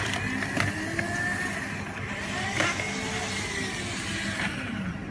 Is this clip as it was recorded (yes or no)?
yes